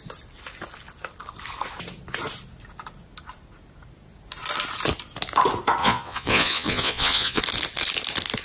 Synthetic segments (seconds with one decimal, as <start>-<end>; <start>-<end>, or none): 5.8-7.4